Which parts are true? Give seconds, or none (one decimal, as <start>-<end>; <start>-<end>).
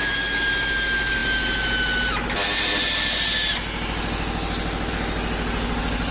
0.0-6.1